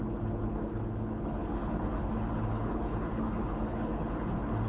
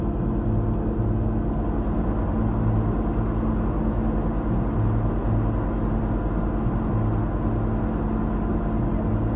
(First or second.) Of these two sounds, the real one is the second